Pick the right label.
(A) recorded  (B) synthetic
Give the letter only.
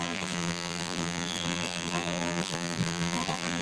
B